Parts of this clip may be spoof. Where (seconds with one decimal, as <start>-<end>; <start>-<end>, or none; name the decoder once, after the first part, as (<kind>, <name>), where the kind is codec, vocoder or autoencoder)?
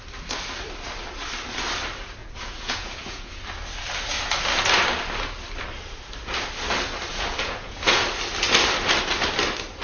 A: 2.2-3.4 (vocoder, Vocos); 7.1-8.0